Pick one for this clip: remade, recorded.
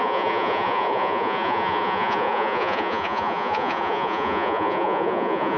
remade